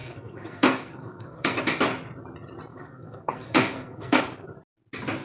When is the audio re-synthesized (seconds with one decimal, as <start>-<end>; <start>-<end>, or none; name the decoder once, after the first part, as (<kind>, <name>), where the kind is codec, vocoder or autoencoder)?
0.0-1.6 (codec, SNAC); 2.7-4.2